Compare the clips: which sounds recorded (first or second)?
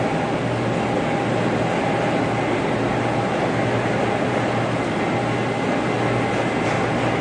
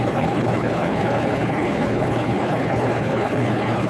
first